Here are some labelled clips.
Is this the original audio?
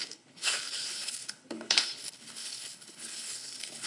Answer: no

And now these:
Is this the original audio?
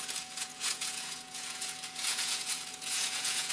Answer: no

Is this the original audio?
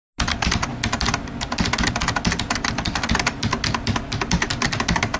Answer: yes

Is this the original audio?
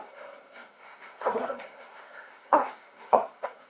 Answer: no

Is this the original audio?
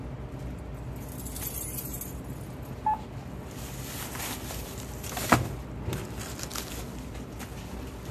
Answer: yes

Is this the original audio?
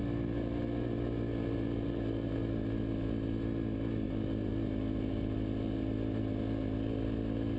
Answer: yes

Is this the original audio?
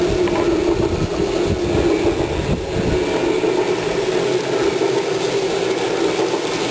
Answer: yes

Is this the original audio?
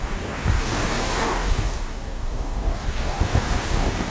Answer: no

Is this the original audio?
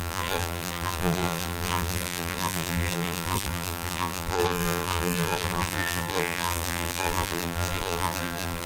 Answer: no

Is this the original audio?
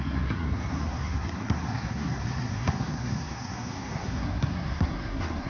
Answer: no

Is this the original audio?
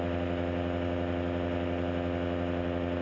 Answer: yes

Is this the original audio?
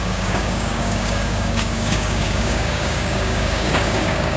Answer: no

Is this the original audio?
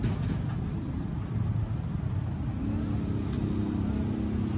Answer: yes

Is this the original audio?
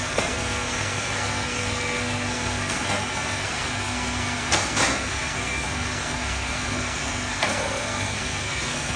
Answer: no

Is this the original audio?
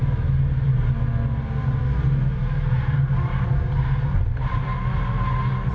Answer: yes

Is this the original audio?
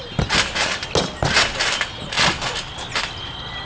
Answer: yes